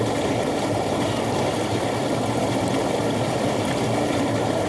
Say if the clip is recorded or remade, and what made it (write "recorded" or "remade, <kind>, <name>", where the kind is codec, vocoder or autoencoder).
recorded